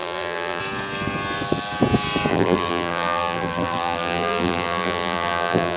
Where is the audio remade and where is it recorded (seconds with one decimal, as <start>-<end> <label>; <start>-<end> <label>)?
0.0-0.6 remade; 0.6-2.3 recorded; 2.3-5.8 remade